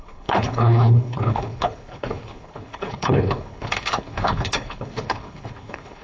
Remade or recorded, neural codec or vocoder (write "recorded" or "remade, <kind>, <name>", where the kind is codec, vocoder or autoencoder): remade, codec, HILCodec